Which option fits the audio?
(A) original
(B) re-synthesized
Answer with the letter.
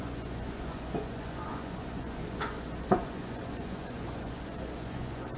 B